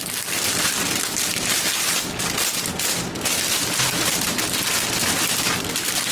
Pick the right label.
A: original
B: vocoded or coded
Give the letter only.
A